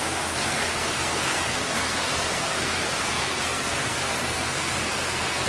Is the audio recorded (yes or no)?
no